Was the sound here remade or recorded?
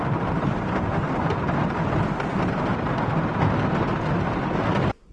recorded